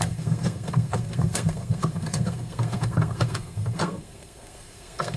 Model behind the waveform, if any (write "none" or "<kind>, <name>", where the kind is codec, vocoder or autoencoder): codec, SNAC